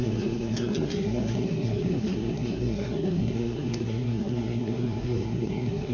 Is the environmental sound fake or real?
fake